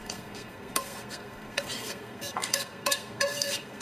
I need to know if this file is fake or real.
fake